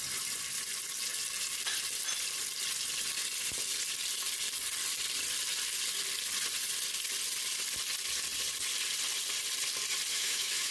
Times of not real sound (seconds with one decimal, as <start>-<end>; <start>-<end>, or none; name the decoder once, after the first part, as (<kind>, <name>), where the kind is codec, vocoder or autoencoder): 10.1-10.7 (autoencoder, DAC-VAE)